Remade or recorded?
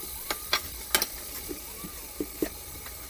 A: recorded